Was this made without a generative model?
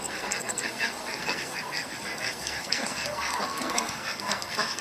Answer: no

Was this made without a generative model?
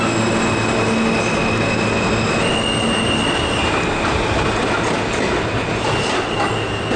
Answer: yes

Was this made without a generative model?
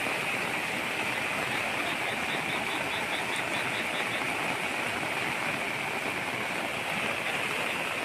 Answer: yes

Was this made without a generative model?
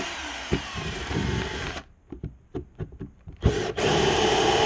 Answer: no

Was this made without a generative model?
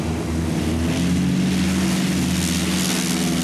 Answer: yes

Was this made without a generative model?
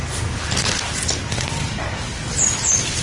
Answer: yes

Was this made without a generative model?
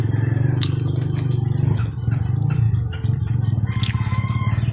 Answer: yes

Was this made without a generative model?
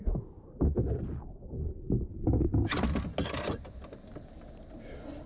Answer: yes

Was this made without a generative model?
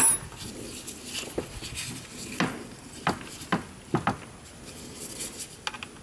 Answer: yes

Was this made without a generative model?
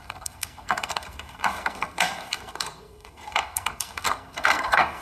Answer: no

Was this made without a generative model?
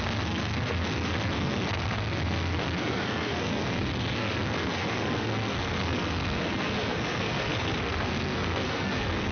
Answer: no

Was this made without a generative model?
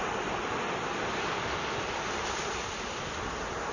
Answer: yes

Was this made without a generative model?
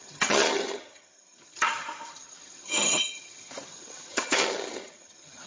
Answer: no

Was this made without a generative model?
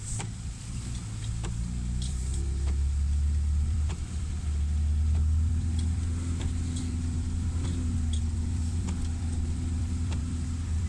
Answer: no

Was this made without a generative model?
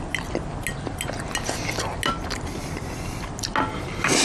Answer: yes